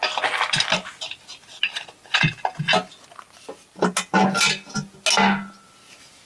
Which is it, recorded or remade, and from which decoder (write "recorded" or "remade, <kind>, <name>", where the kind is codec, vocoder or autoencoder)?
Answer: recorded